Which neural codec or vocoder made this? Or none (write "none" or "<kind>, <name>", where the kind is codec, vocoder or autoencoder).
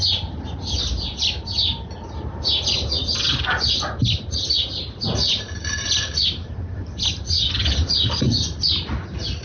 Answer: none